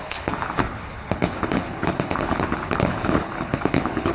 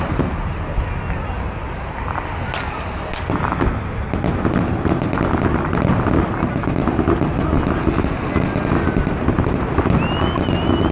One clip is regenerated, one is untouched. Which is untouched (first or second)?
second